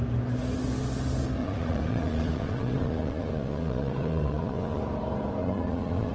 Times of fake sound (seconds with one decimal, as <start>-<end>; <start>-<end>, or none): 1.4-4.8; 5.4-6.1